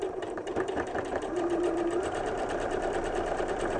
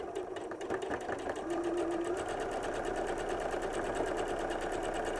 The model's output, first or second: first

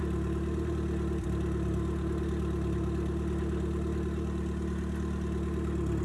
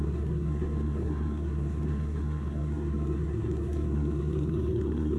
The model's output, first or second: second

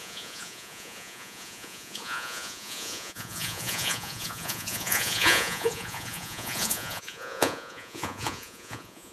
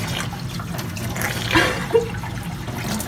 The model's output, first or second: first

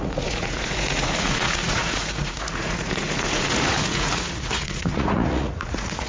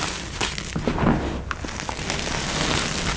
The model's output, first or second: first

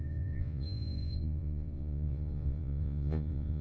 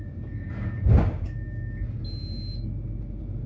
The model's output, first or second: first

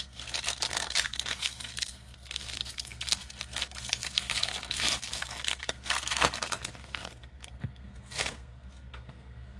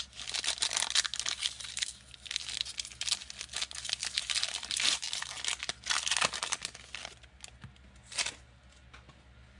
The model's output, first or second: first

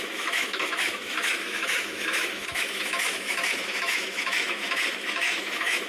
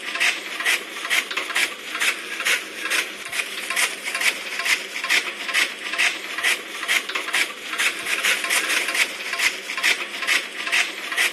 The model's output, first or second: first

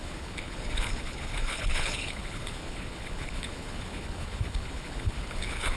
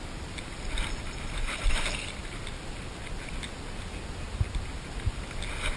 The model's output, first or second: first